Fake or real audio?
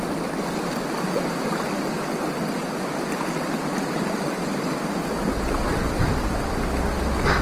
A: real